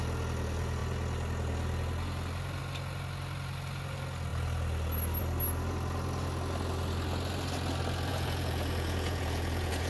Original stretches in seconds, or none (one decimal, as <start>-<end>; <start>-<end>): 0.0-8.1